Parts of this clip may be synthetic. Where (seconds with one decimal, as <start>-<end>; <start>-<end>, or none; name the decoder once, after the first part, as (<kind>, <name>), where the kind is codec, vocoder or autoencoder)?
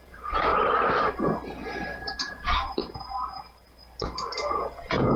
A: 0.0-0.5 (vocoder, Vocos); 2.2-2.8; 4.5-5.2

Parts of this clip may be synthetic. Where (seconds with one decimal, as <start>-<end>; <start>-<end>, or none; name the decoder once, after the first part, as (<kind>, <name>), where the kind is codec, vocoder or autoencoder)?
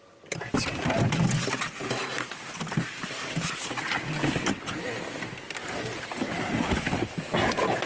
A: none